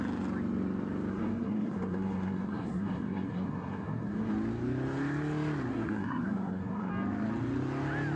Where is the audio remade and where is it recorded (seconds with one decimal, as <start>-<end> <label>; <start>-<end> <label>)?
0.0-1.1 recorded; 1.1-4.3 remade; 4.3-5.7 recorded; 5.7-6.9 remade; 6.9-8.2 recorded